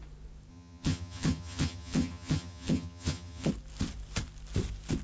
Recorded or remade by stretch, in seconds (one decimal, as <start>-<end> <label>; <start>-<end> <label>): 0.0-0.5 recorded; 0.5-3.5 remade; 3.5-5.0 recorded